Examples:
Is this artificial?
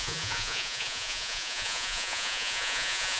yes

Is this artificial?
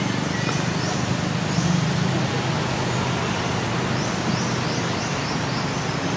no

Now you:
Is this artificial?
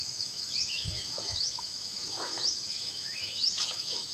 yes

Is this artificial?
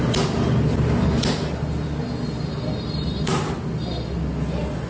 no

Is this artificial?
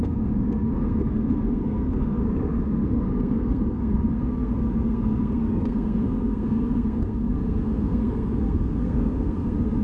yes